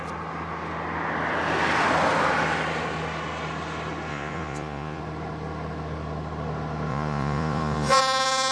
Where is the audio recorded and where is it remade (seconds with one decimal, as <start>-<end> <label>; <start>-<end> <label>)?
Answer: 0.0-4.1 recorded; 4.1-5.0 remade; 5.0-6.9 recorded; 6.9-8.0 remade; 8.0-8.5 recorded